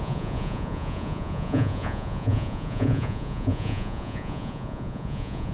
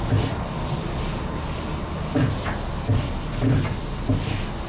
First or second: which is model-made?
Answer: first